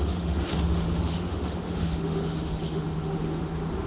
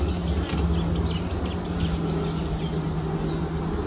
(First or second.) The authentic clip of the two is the second